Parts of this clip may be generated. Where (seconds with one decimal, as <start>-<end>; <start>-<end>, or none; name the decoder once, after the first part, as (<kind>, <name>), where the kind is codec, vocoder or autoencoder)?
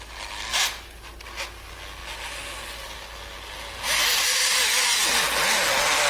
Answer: none